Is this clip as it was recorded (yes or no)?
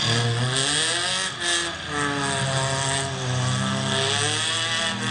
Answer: yes